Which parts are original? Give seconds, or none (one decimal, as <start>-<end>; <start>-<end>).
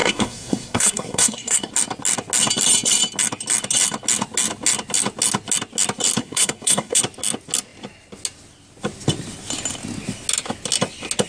1.7-6.2; 7.0-11.3